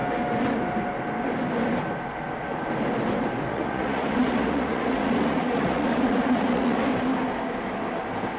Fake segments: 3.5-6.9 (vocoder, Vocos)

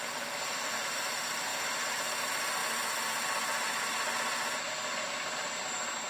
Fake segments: 0.0-1.5 (vocoder, BigVGAN v2); 2.2-2.6; 5.0-6.1

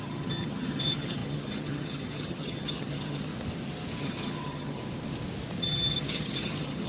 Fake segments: 0.0-3.3 (vocoder, HiFi-GAN); 4.0-4.8; 5.6-6.9

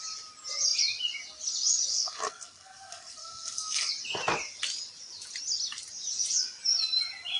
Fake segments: 1.9-3.9 (codec, SNAC)